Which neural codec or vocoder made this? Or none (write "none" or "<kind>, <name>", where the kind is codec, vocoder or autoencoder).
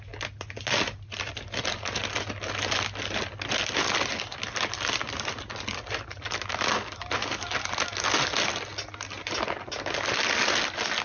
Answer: none